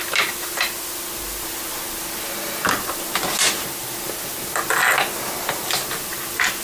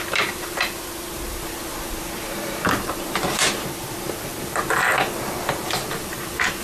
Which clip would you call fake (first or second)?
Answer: second